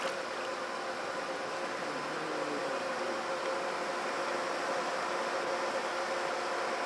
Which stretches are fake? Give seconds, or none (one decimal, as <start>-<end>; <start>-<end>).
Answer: none